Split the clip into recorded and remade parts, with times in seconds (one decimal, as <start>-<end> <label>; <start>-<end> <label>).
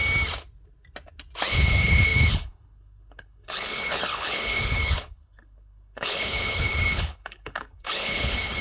0.0-1.5 recorded; 1.5-8.6 remade